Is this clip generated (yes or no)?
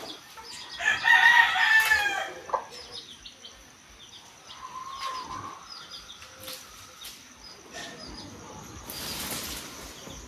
no